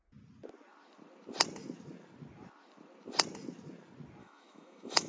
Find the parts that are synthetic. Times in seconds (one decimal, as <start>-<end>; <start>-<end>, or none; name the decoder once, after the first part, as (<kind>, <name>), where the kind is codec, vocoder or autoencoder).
4.2-5.1 (autoencoder, DAC-VAE)